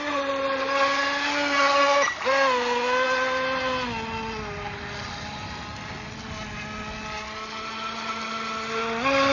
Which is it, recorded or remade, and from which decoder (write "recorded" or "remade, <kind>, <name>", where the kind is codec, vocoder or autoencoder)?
recorded